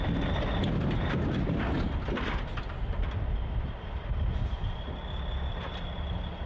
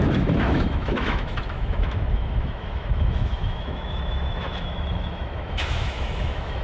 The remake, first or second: second